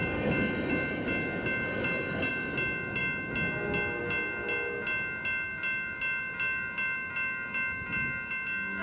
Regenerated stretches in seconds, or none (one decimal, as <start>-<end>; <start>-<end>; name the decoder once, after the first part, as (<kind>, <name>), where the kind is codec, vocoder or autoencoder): none